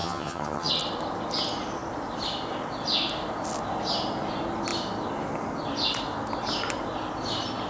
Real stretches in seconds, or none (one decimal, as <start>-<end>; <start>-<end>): 0.7-7.7